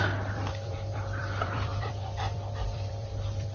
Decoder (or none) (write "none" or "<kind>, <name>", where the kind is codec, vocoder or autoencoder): vocoder, BigVGAN v2